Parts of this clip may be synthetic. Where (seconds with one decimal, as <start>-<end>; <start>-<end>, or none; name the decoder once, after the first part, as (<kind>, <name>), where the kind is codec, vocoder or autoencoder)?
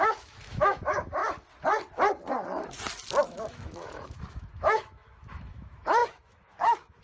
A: 0.0-1.2 (autoencoder, DAC-VAE); 3.2-7.0